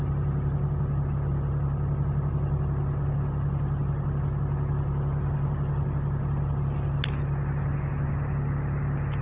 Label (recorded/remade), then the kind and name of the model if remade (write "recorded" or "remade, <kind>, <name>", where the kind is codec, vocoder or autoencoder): recorded